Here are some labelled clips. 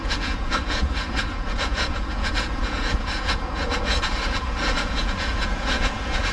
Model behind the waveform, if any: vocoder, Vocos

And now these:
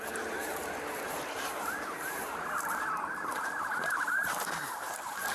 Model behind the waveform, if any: none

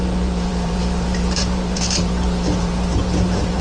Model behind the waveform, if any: vocoder, BigVGAN v2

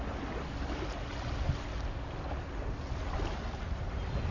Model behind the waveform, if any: none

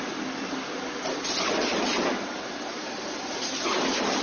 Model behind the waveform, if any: none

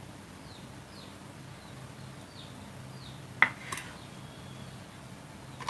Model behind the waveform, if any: none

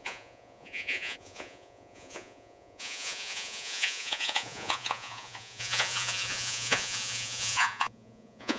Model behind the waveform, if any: vocoder, Vocos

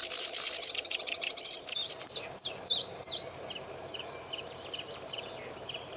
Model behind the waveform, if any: vocoder, BigVGAN v2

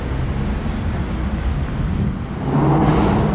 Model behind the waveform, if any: none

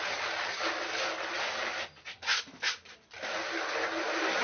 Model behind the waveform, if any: none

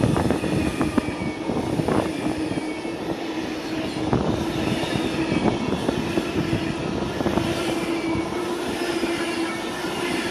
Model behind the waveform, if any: none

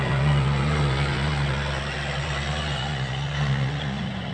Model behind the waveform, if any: vocoder, Vocos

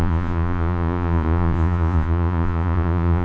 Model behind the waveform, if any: vocoder, Vocos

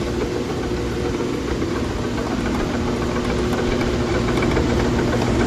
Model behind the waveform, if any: none